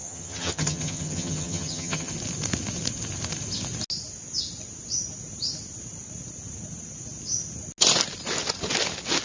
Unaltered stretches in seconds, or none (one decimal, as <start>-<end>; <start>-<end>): 2.1-9.2